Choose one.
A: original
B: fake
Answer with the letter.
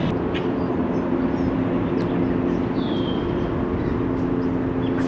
A